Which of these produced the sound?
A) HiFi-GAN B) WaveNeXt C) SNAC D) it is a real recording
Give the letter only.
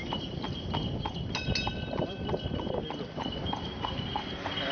D